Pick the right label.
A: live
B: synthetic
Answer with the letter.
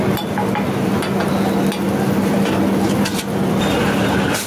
A